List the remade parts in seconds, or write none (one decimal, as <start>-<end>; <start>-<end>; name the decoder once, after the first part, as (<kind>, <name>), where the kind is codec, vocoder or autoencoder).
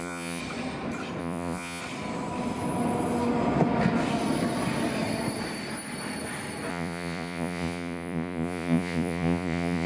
0.0-0.4 (vocoder, Vocos); 1.2-1.8; 6.7-9.9